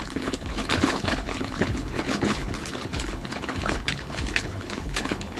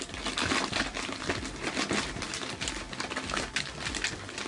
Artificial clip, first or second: first